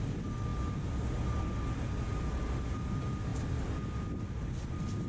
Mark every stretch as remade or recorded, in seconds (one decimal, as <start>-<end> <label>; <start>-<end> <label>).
0.0-5.1 recorded